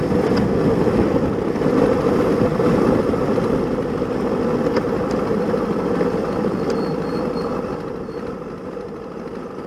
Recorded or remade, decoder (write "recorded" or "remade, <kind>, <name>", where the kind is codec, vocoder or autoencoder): recorded